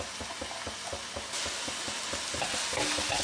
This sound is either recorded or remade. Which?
recorded